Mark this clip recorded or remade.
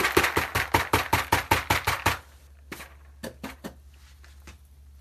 recorded